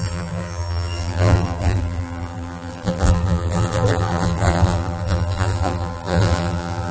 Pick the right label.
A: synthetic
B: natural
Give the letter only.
A